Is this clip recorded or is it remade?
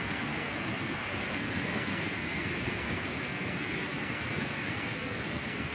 remade